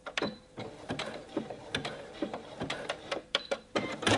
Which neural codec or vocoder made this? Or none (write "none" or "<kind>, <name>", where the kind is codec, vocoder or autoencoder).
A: vocoder, BigVGAN v2